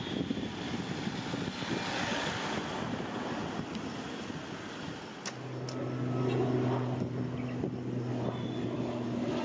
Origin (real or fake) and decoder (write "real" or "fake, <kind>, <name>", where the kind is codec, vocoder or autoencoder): real